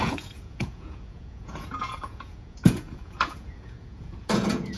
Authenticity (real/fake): fake